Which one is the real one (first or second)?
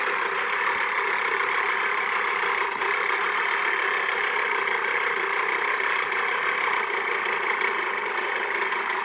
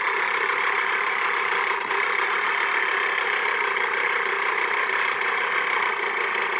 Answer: second